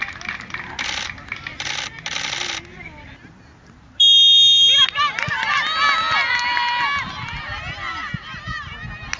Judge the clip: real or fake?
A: real